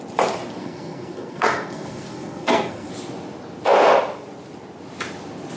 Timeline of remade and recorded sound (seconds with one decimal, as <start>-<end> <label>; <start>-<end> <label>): 0.0-0.6 recorded; 0.6-2.9 remade; 2.9-5.6 recorded